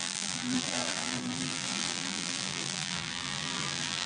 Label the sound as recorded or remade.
remade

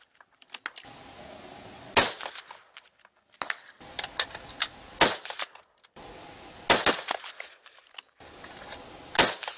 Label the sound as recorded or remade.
recorded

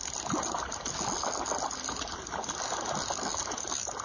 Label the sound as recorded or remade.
recorded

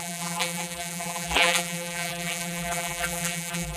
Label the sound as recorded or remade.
remade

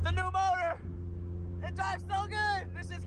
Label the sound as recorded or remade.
recorded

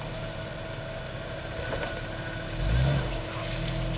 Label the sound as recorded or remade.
recorded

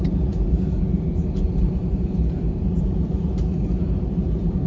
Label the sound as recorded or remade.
remade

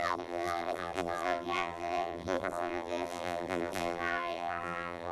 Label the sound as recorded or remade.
remade